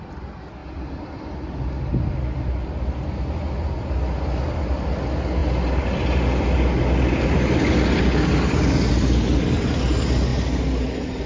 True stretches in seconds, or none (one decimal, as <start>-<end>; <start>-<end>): 0.0-11.3